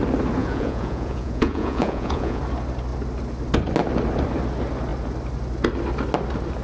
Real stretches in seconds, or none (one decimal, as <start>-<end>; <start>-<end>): 0.0-0.4; 2.4-6.6